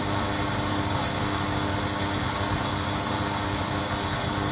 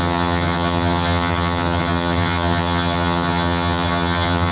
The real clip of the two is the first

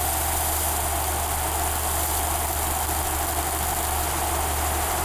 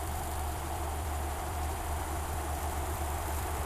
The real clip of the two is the first